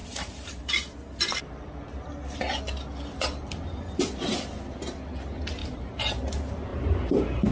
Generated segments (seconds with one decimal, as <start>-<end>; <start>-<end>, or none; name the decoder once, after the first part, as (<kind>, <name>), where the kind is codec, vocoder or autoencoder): 0.0-0.7 (vocoder, BigVGAN v2); 1.4-2.4; 5.6-6.2; 6.7-7.5